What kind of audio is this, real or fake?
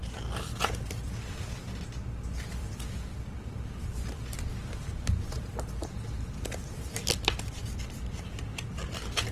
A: fake